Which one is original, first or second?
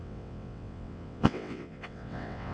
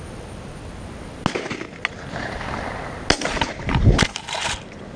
second